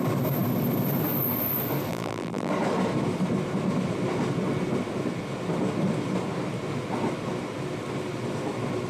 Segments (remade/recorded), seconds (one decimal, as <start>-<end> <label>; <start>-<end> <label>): 0.0-1.9 recorded; 1.9-2.5 remade; 2.5-8.9 recorded